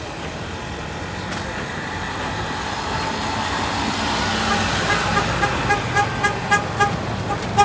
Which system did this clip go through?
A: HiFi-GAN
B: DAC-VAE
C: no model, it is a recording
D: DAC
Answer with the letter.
C